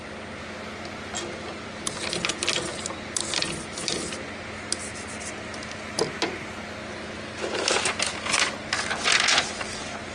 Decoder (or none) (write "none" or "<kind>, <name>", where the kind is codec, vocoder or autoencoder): none